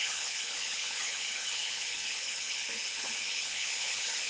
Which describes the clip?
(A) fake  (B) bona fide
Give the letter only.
A